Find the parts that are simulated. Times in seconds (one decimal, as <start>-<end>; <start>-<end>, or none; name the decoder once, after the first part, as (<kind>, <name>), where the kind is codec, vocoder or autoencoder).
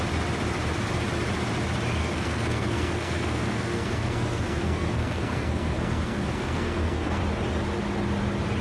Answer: 2.0-7.2 (codec, SNAC)